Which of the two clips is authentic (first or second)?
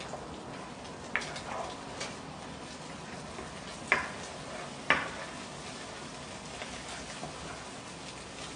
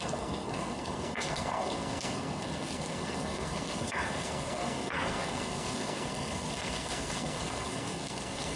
first